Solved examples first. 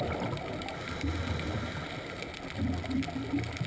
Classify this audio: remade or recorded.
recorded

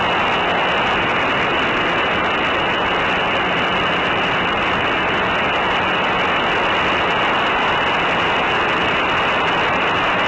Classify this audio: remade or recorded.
recorded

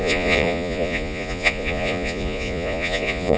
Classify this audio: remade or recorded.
remade